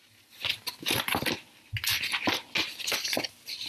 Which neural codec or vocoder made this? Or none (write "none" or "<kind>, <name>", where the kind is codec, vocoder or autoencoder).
none